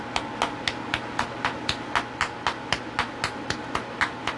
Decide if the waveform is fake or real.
real